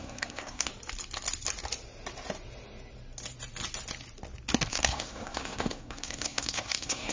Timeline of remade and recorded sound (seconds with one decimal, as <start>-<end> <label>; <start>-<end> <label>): 0.0-0.7 remade; 0.7-4.7 recorded; 4.7-7.1 remade

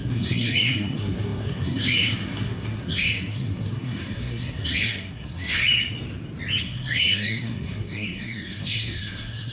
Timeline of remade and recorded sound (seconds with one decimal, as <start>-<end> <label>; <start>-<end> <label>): 0.0-5.6 remade; 5.6-6.6 recorded; 6.6-9.5 remade

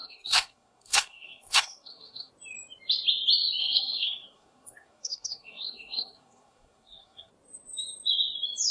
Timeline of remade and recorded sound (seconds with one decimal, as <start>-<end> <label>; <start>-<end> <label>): 0.0-2.3 remade; 2.3-3.6 recorded; 3.6-7.3 remade; 7.3-8.7 recorded

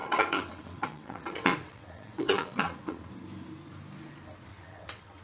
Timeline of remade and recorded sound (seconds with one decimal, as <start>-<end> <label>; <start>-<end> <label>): 0.0-3.1 remade; 3.1-4.5 recorded; 4.5-5.2 remade

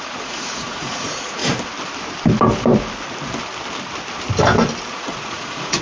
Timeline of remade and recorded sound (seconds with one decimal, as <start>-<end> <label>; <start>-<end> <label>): 0.0-1.4 remade; 1.4-4.9 recorded; 4.9-5.8 remade

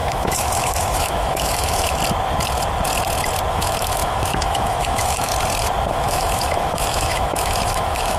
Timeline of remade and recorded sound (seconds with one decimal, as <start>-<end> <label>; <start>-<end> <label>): 0.0-2.0 remade; 2.0-3.5 recorded; 3.5-5.3 remade; 5.3-5.9 recorded; 5.9-8.2 remade

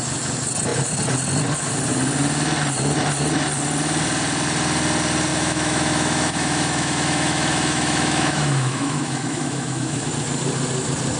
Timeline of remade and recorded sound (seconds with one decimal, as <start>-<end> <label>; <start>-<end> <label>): 0.0-5.3 recorded; 5.3-10.1 remade; 10.1-11.2 recorded